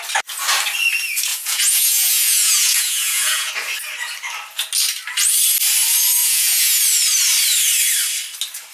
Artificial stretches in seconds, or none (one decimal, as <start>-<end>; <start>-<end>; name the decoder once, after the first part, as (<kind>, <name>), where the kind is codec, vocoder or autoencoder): 1.3-3.5 (vocoder, Vocos); 6.2-6.8